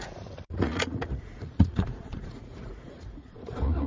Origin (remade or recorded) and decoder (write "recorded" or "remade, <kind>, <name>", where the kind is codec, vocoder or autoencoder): remade, vocoder, Vocos